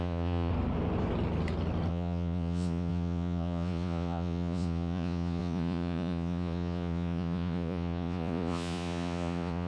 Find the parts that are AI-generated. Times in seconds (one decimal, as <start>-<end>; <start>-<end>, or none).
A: 0.0-0.5; 1.9-9.7

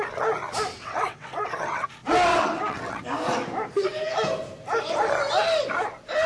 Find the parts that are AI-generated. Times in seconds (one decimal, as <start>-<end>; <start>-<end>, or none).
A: 0.7-1.9; 2.3-3.0

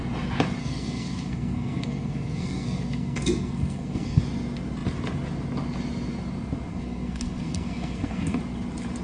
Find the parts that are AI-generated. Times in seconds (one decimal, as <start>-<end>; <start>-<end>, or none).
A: 0.6-4.2; 6.7-8.4

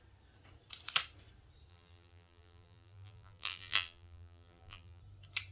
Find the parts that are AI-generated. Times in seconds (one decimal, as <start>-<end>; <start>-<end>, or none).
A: 1.7-5.0